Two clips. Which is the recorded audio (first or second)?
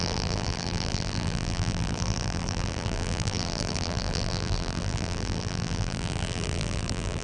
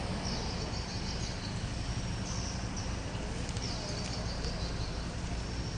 second